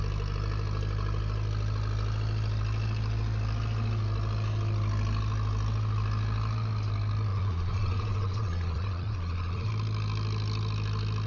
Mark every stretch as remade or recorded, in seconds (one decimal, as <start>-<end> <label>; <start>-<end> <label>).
0.0-7.3 recorded; 7.3-9.7 remade; 9.7-11.3 recorded